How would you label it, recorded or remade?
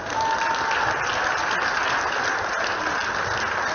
recorded